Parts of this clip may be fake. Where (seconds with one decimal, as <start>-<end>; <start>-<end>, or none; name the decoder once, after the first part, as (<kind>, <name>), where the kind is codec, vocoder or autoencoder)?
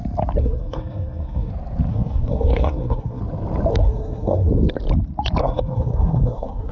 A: 0.4-1.5 (codec, SNAC); 1.9-3.2; 3.7-4.5; 5.4-6.7